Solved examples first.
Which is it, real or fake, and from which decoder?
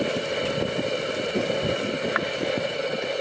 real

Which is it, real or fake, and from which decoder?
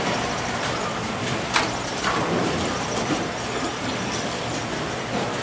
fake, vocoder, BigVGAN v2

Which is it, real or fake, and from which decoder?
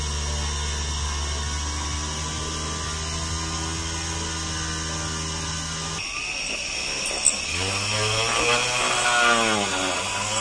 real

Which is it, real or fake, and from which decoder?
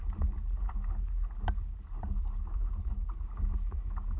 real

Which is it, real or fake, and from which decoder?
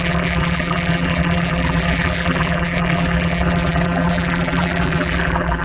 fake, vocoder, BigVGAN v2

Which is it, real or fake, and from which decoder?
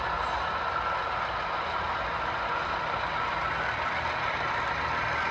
real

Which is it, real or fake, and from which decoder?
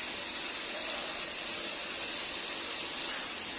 real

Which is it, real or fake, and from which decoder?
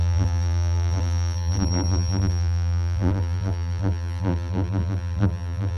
fake, vocoder, BigVGAN v2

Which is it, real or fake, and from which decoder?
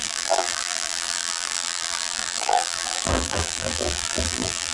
fake, vocoder, BigVGAN v2